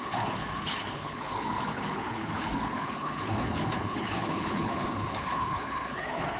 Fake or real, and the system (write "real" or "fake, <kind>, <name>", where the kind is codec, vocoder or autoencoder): fake, codec, HILCodec